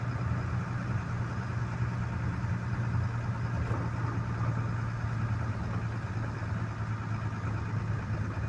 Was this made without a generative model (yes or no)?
yes